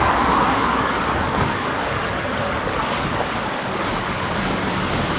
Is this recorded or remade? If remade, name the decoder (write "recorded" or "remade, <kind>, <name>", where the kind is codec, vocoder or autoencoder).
remade, codec, DAC